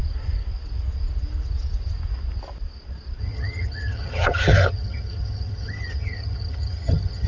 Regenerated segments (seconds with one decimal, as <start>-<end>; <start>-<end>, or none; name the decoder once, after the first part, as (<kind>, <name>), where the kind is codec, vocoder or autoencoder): 3.2-7.3 (vocoder, HiFi-GAN)